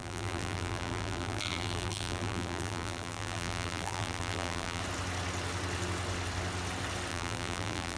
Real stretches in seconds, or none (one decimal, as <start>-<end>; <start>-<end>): 4.8-7.1